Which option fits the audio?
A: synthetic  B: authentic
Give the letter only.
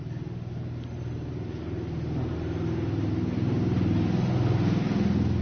B